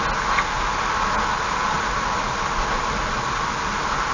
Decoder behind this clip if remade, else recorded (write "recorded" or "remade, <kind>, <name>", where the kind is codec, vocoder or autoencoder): recorded